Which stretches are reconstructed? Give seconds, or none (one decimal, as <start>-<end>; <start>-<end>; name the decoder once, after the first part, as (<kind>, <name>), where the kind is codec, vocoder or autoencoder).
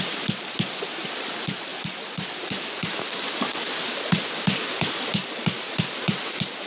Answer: none